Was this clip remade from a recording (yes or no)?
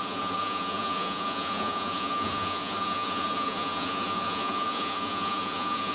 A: yes